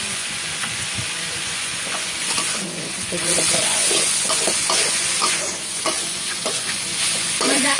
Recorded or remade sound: remade